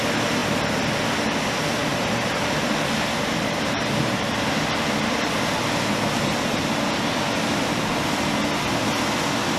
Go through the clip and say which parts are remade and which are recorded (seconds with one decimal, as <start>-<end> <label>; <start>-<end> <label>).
0.0-1.9 recorded; 1.9-4.5 remade; 4.5-9.6 recorded